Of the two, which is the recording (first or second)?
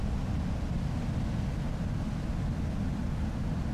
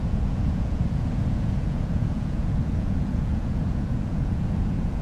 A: first